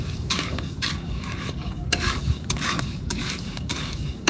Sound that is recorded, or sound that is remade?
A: remade